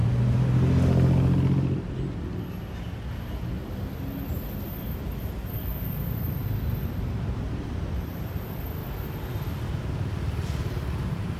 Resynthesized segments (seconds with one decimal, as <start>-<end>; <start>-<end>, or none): 4.3-8.8; 9.7-11.4